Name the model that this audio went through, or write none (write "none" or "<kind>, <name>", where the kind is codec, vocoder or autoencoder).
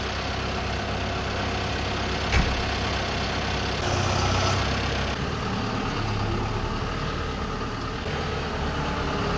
none